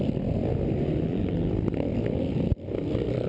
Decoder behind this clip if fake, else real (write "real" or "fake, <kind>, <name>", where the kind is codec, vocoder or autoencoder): real